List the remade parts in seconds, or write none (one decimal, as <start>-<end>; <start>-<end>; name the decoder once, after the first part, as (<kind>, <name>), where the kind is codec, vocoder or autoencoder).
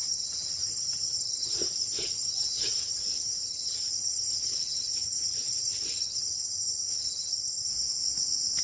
0.0-7.7 (vocoder, HiFi-GAN)